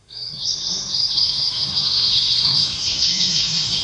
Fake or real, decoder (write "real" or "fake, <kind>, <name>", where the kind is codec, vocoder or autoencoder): fake, codec, SNAC